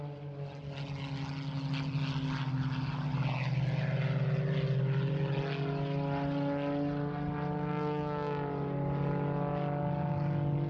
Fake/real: real